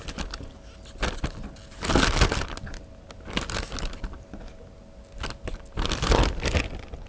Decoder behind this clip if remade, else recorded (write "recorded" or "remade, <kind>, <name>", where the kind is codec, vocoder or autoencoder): recorded